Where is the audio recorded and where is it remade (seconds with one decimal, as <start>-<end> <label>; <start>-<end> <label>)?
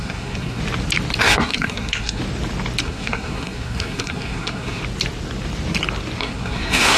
0.0-0.6 remade; 0.6-1.2 recorded; 1.2-2.2 remade; 2.2-2.8 recorded; 2.8-4.8 remade; 4.8-6.2 recorded; 6.2-7.0 remade